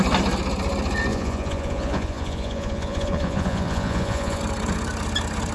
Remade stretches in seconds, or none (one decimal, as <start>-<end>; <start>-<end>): 1.1-4.4